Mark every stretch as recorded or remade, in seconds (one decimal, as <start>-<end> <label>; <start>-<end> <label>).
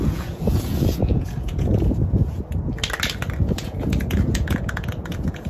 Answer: 0.0-2.4 remade; 2.4-3.4 recorded; 3.4-5.5 remade